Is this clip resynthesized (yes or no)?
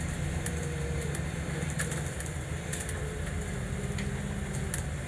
no